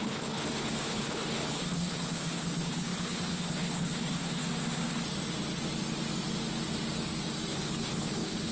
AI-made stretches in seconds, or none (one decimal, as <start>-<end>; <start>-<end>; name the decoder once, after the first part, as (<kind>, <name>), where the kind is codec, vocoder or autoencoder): 0.0-4.4 (codec, HILCodec); 7.5-8.5